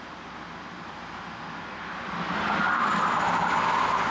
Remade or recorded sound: recorded